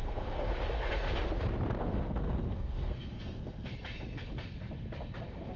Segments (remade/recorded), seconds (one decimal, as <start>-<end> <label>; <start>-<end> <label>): 0.0-0.5 remade; 0.5-1.8 recorded; 1.8-3.7 remade; 3.7-5.6 recorded